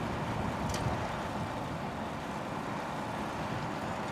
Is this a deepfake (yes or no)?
no